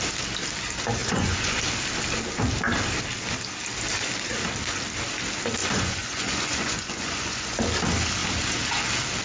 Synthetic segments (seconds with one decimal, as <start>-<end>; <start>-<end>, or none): 1.0-1.6; 5.6-7.6